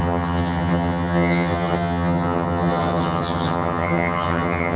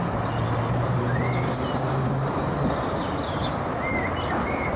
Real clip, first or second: second